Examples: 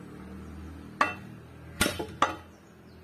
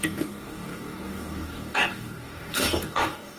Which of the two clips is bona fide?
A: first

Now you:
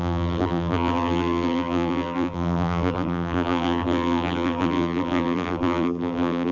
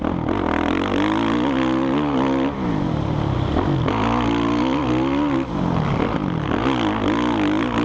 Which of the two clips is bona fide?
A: second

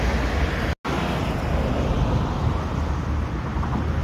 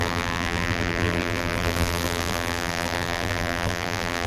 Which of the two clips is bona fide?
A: first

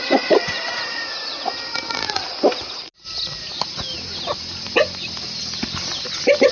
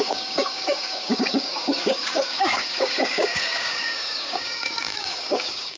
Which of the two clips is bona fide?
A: first